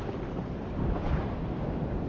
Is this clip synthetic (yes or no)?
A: no